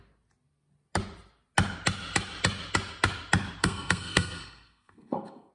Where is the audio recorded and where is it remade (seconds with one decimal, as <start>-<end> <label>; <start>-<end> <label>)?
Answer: 0.0-3.6 recorded; 3.6-5.5 remade